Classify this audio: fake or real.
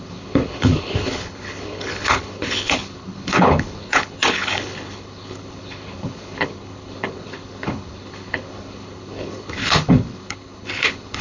fake